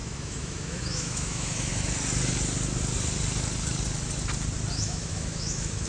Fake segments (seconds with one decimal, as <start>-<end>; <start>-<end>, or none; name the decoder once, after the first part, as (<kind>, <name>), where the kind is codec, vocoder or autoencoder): 0.0-1.7 (autoencoder, DAC-VAE); 4.7-5.9

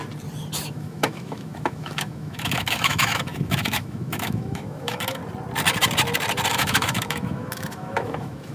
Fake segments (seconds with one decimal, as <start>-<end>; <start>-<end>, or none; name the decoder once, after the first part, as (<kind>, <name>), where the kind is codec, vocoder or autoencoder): 0.7-5.2 (autoencoder, DAC-VAE); 6.5-8.5